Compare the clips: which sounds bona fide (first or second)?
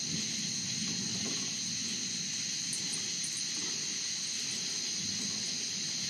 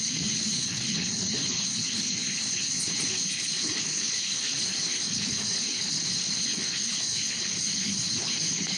first